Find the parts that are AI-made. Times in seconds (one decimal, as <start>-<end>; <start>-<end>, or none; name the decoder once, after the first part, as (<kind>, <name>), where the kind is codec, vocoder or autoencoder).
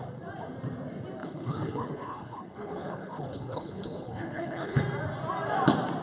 1.2-4.8 (codec, HILCodec)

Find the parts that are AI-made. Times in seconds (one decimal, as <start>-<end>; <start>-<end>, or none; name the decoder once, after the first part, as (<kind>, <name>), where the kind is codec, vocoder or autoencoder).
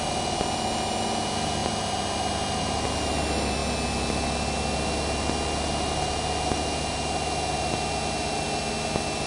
none